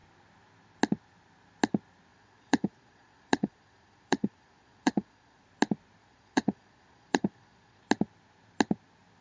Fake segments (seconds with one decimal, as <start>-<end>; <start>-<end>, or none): 2.1-5.4; 6.0-7.8